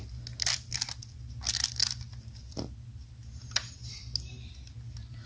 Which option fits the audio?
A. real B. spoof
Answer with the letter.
A